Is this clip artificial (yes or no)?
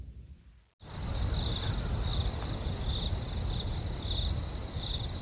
no